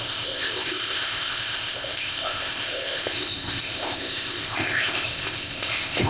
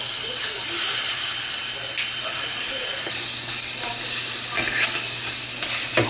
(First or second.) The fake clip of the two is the first